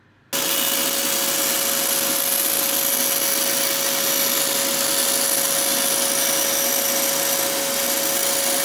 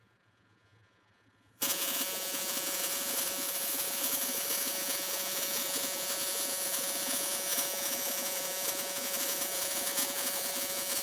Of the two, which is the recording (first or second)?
first